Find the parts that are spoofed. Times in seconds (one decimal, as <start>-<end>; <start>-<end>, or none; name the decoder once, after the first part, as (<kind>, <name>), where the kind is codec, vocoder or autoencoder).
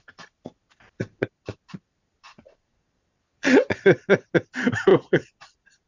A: 2.3-4.0 (vocoder, Vocos); 4.9-5.9